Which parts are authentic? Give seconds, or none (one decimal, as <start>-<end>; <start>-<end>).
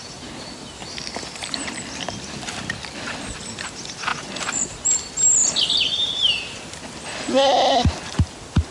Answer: 0.0-8.7